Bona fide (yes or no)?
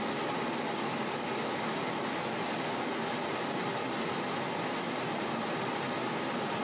yes